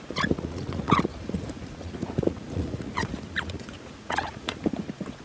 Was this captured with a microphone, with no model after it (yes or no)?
no